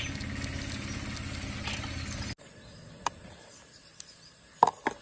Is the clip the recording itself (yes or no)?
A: yes